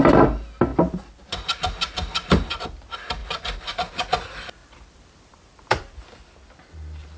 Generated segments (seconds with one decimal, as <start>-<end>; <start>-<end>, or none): 0.7-1.6; 4.6-6.0